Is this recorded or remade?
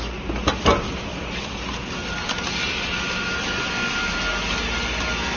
recorded